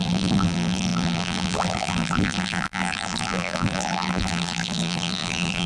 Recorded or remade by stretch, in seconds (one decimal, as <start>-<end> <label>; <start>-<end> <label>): 0.0-5.7 remade